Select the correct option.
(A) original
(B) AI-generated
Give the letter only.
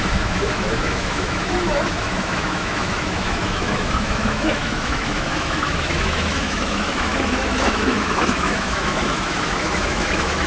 B